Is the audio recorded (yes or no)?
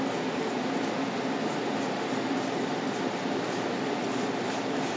no